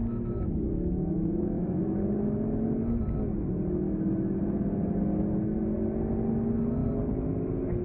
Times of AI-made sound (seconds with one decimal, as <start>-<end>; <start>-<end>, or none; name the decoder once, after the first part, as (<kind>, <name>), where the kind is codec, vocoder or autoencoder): 0.0-1.8 (autoencoder, DAC-VAE)